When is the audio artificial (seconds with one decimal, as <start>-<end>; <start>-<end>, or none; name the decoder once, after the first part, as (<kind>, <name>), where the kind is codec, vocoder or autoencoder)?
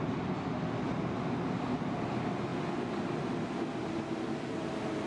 none